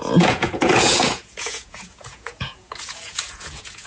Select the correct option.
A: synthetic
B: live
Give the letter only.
A